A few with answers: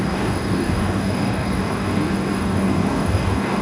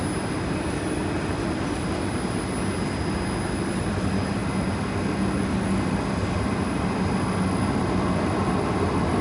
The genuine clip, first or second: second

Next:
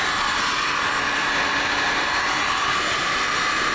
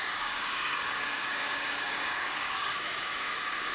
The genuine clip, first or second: first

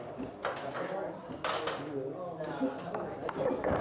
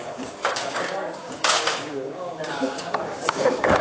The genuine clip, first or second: first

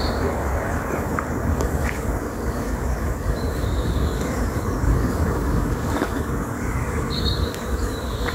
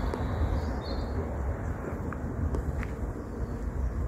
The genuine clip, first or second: second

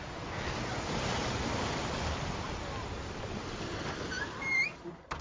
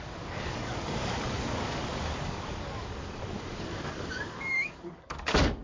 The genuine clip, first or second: first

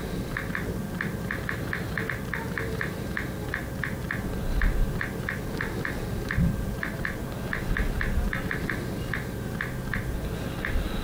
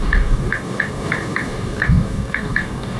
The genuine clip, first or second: first